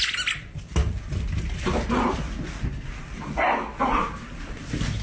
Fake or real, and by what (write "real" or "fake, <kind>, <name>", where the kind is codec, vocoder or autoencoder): real